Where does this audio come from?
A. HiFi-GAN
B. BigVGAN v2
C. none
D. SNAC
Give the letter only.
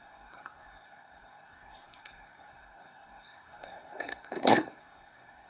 D